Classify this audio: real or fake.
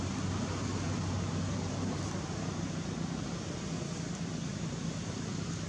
real